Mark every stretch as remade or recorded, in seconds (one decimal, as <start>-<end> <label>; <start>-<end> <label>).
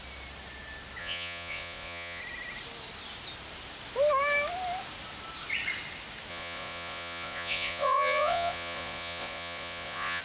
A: 0.0-1.0 recorded; 1.0-2.2 remade; 2.2-6.3 recorded; 6.3-10.2 remade